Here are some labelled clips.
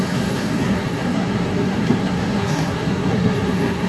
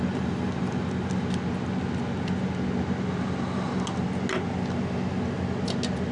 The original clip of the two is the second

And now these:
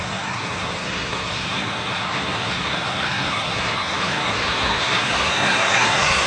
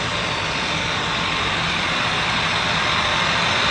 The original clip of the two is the second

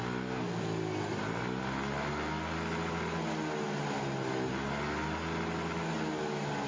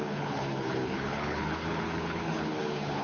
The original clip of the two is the first